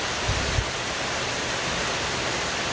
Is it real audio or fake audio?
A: real